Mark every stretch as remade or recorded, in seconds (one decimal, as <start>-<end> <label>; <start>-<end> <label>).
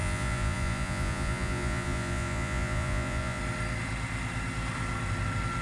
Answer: 0.0-3.4 remade; 3.4-5.6 recorded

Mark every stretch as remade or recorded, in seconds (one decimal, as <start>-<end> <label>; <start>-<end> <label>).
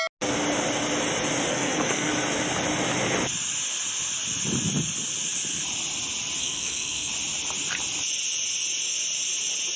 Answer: 0.0-1.5 recorded; 1.5-2.1 remade; 2.1-6.4 recorded; 6.4-7.1 remade; 7.1-9.8 recorded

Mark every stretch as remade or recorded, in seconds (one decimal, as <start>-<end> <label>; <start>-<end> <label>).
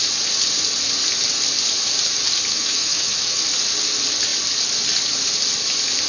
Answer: 0.0-2.5 recorded; 2.5-3.4 remade; 3.4-6.1 recorded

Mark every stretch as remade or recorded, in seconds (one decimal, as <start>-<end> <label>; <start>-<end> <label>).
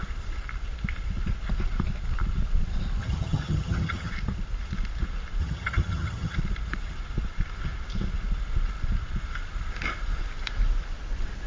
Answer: 0.0-3.0 recorded; 3.0-4.1 remade; 4.1-5.4 recorded; 5.4-6.4 remade; 6.4-11.5 recorded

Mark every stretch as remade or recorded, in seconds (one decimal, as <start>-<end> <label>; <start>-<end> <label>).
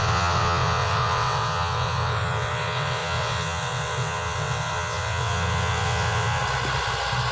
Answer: 0.0-6.4 remade; 6.4-7.3 recorded